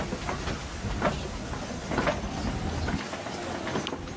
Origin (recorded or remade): recorded